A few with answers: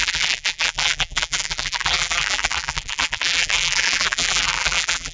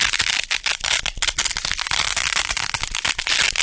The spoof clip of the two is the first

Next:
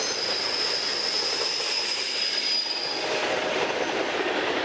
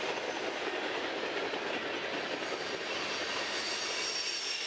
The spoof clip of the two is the first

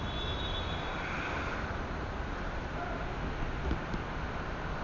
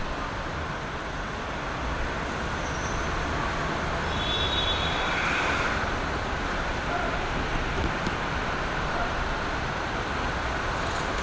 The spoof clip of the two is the second